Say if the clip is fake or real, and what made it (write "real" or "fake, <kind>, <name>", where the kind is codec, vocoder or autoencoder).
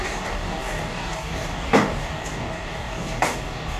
fake, codec, DAC